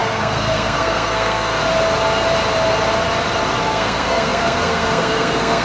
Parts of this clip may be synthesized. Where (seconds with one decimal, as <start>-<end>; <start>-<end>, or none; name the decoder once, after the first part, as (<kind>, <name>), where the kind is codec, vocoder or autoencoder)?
0.0-1.6 (codec, SNAC); 3.6-5.6

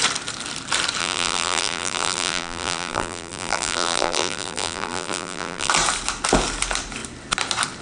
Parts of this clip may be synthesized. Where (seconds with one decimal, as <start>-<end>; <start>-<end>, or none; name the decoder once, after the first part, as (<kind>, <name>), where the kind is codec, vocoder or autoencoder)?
1.0-5.7 (vocoder, BigVGAN v2)

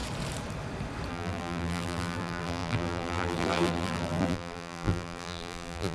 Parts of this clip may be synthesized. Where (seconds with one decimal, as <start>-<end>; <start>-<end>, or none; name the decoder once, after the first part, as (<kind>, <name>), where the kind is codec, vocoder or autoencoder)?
1.1-5.9 (vocoder, BigVGAN v2)

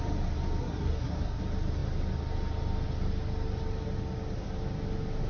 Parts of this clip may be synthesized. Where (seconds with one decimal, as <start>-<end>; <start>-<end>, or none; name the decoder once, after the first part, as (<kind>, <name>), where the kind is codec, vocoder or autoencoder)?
0.6-1.4 (codec, SNAC)

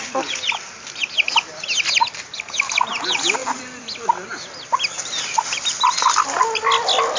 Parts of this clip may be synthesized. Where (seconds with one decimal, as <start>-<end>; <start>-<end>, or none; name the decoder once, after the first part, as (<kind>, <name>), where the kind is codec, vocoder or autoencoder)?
none

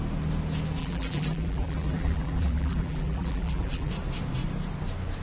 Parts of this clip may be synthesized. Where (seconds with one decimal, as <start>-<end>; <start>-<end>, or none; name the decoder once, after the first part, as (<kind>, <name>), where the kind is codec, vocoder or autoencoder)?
0.8-3.9 (vocoder, BigVGAN v2)

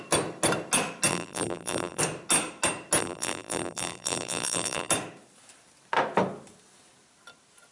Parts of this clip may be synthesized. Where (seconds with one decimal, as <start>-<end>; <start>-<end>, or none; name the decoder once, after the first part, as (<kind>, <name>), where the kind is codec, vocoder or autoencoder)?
1.1-2.0 (vocoder, BigVGAN v2); 3.0-4.9